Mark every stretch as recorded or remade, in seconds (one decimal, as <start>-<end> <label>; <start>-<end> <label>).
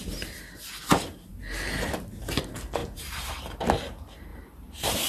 0.0-2.8 recorded; 2.8-3.4 remade; 3.4-4.3 recorded; 4.3-5.1 remade